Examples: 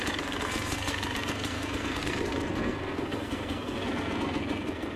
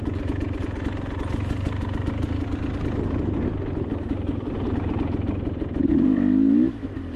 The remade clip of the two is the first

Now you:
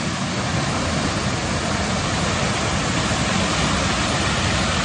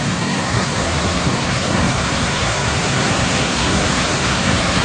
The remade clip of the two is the second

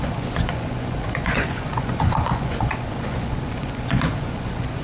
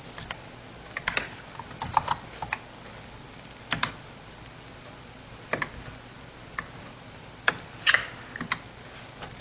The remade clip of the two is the first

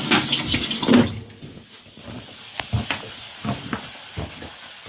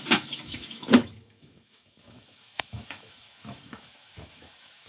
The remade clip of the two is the second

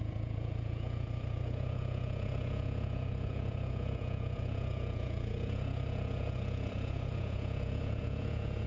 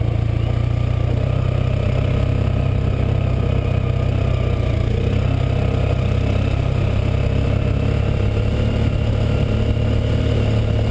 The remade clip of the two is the first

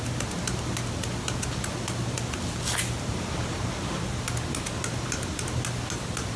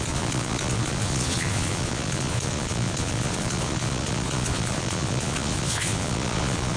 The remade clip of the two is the second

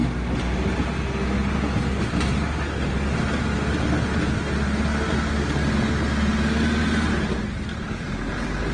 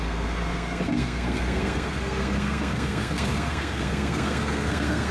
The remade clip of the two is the second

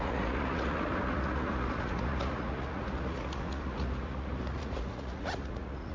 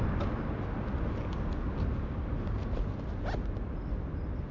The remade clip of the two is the first